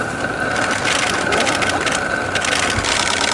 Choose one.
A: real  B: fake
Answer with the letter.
A